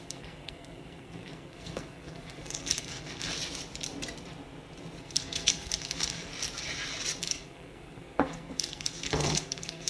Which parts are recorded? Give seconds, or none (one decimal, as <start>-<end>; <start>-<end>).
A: 3.3-5.0; 6.3-7.2